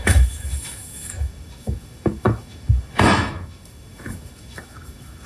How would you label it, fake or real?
fake